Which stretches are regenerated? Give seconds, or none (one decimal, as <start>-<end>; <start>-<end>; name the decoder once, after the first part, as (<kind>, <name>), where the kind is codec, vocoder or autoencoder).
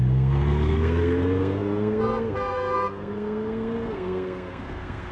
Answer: 0.0-5.1 (codec, SNAC)